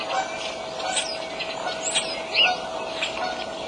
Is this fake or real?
real